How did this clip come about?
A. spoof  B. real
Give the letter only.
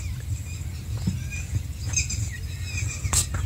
B